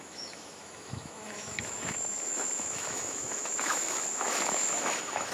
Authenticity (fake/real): fake